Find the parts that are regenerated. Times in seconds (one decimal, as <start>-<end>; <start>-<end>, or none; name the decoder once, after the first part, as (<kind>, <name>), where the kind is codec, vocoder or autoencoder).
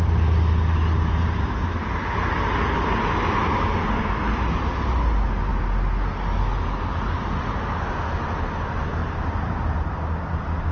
1.1-2.3 (vocoder, BigVGAN v2); 9.0-9.9